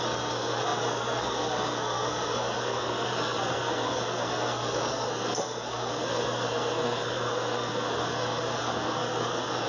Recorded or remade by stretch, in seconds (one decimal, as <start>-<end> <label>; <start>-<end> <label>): 0.0-9.7 remade